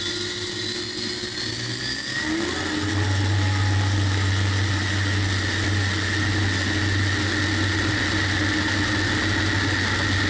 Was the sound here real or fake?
real